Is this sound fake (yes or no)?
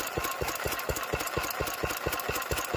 no